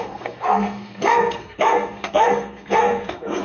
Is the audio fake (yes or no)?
yes